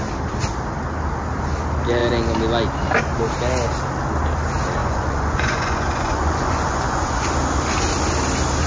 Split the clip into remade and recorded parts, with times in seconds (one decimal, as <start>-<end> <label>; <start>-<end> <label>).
0.0-4.8 recorded; 4.8-7.3 remade; 7.3-8.7 recorded